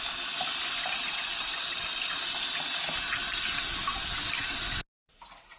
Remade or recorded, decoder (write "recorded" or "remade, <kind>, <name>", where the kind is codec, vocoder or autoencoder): recorded